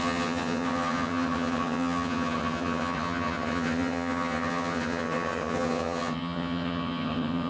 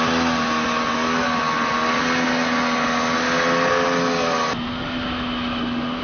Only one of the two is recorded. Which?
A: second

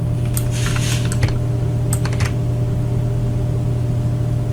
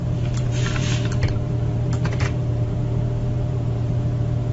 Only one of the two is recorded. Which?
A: first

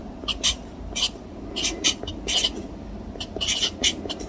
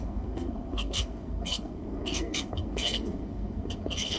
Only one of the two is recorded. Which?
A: first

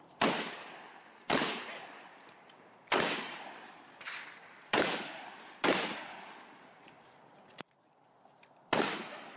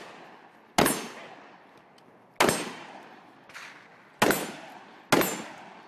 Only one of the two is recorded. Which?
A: second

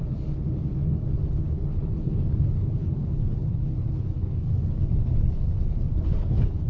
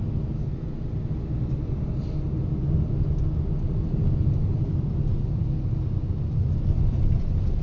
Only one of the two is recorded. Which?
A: second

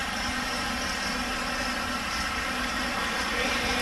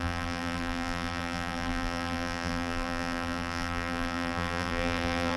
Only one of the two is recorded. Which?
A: first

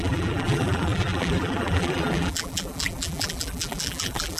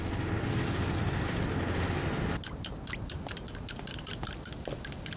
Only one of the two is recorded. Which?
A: second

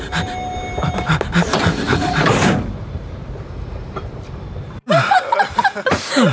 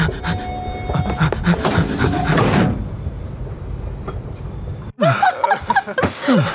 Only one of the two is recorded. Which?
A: second